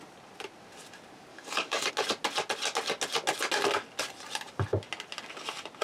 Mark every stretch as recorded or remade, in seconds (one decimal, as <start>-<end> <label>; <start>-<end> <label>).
0.0-1.3 recorded; 1.3-1.9 remade; 1.9-5.8 recorded